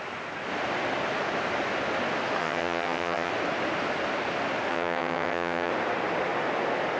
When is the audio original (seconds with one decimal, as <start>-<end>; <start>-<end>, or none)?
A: 0.0-2.4; 3.3-4.7; 5.7-7.0